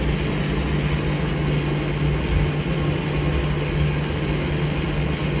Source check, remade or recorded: recorded